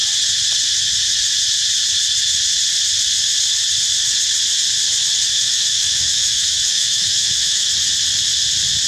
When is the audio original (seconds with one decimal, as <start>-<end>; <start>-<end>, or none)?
0.0-5.3; 7.7-8.9